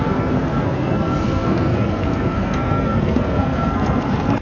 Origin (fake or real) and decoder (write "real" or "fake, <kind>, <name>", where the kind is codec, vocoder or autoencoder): fake, codec, SNAC